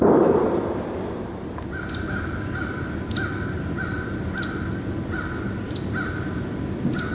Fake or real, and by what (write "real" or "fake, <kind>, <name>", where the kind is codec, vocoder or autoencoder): real